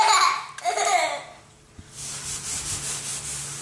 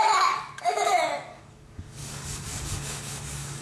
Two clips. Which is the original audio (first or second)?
first